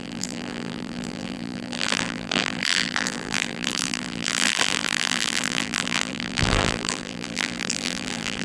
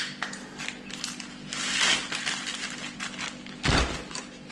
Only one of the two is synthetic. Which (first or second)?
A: first